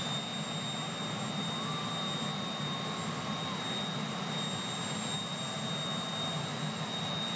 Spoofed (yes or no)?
no